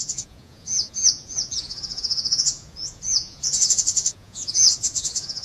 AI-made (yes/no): yes